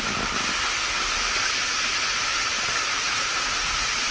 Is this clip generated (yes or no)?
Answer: no